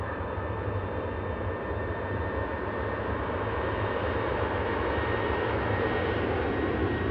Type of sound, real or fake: real